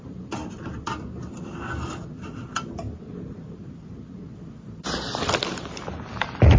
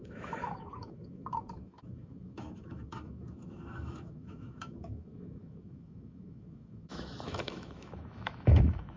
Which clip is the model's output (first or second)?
second